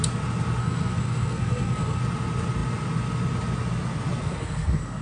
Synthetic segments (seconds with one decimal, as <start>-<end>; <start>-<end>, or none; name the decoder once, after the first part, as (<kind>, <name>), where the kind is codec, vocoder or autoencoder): 0.6-2.0 (codec, SNAC); 4.2-5.0